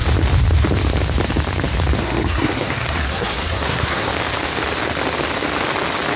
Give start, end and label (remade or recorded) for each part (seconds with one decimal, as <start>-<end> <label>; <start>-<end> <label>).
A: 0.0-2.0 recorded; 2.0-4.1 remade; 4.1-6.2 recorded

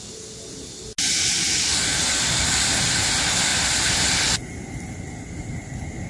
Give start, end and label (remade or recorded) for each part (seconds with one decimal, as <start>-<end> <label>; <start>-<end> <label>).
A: 0.0-6.1 recorded

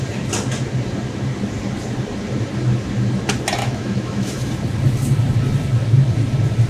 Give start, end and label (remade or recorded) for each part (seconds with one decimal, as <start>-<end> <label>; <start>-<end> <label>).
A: 0.0-3.6 recorded; 3.6-4.5 remade; 4.5-6.7 recorded

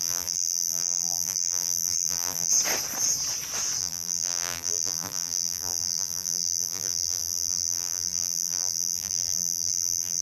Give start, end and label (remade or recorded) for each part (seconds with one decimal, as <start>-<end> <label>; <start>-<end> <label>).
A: 0.0-2.5 remade; 2.5-3.8 recorded; 3.8-10.2 remade

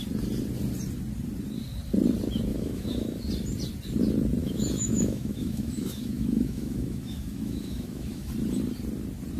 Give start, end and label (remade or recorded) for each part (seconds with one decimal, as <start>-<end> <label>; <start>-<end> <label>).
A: 0.0-2.5 recorded; 2.5-3.2 remade; 3.2-4.4 recorded; 4.4-8.3 remade; 8.3-9.4 recorded

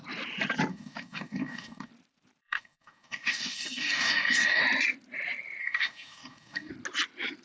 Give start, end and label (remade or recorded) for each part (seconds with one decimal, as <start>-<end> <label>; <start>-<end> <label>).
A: 0.0-0.7 recorded; 0.7-1.9 remade; 1.9-2.4 recorded; 2.4-4.6 remade; 4.6-5.6 recorded; 5.6-6.7 remade; 6.7-7.4 recorded

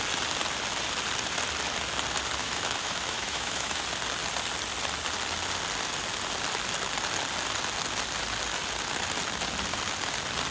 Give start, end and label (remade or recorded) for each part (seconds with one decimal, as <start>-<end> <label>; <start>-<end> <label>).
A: 0.0-2.4 recorded; 2.4-3.8 remade; 3.8-10.5 recorded

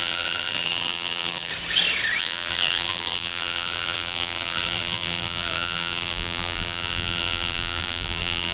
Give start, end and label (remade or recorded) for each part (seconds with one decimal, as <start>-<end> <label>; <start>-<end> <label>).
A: 0.0-1.5 remade; 1.5-2.2 recorded; 2.2-8.5 remade